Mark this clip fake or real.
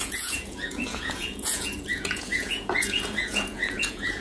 fake